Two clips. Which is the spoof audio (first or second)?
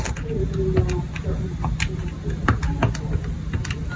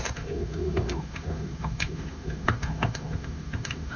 second